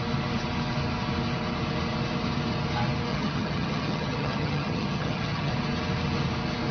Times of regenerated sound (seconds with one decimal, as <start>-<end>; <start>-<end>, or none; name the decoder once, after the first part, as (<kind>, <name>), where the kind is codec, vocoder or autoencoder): 3.1-5.5 (vocoder, HiFi-GAN)